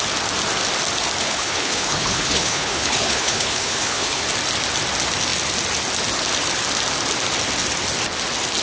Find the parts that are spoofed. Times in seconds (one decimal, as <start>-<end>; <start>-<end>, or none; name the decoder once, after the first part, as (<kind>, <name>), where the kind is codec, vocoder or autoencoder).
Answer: 1.2-4.2 (codec, HILCodec)